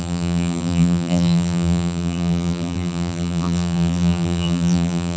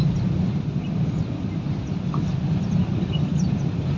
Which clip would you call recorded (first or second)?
second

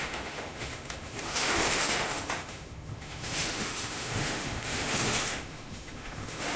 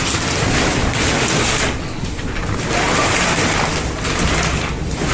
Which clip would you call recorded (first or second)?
second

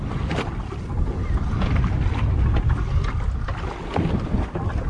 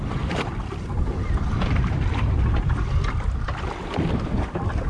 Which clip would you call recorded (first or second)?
first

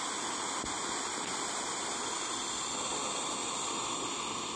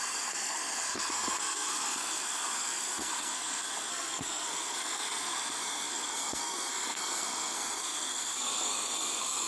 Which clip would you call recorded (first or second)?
first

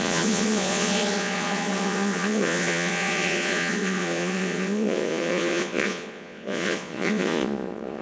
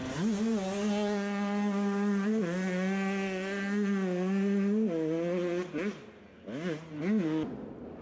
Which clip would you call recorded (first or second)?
second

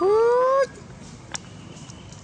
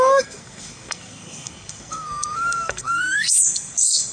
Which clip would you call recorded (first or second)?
first